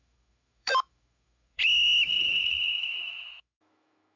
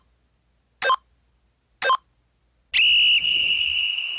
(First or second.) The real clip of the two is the second